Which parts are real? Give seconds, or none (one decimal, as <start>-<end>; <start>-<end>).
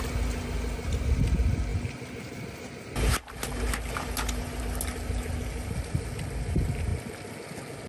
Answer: 0.0-7.9